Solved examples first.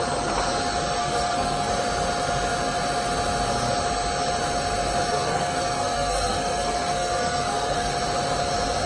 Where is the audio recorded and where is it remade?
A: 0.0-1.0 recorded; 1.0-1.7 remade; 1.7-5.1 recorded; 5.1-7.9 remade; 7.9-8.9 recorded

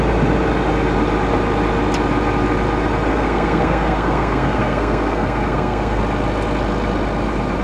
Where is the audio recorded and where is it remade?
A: 0.0-3.1 recorded; 3.1-6.0 remade; 6.0-7.6 recorded

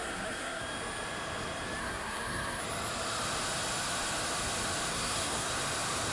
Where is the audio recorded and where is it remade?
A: 0.0-0.6 remade; 0.6-1.8 recorded; 1.8-2.6 remade; 2.6-4.9 recorded; 4.9-5.5 remade; 5.5-6.1 recorded

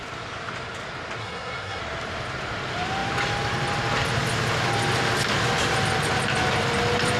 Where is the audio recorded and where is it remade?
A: 0.0-1.2 recorded; 1.2-1.8 remade; 1.8-7.2 recorded

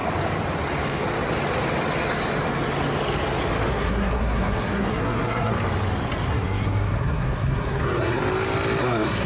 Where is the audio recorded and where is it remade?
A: 0.0-3.7 recorded; 3.7-5.5 remade; 5.5-6.3 recorded; 6.3-8.2 remade; 8.2-8.8 recorded; 8.8-9.3 remade